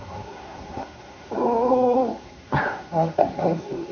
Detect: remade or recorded remade